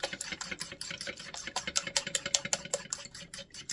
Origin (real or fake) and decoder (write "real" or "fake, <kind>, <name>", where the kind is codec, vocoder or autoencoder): real